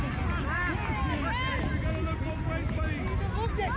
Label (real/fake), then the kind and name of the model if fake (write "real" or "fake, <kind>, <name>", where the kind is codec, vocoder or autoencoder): real